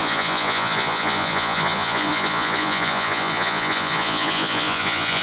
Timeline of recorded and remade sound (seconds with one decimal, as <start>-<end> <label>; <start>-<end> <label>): 0.0-5.2 remade